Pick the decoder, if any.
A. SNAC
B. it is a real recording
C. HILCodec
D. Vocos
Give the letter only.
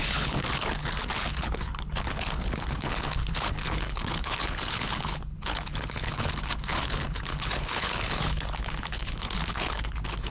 C